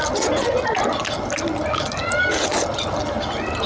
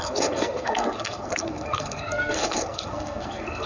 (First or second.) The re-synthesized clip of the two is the second